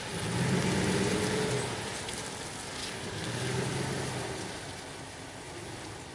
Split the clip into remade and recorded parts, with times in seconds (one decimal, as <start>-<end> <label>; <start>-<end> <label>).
0.0-2.8 recorded; 2.8-3.7 remade; 3.7-6.1 recorded